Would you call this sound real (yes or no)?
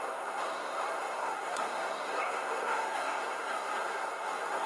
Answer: no